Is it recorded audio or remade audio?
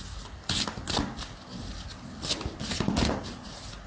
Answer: recorded